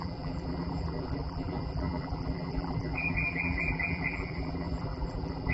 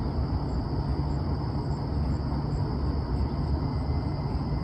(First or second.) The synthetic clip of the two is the first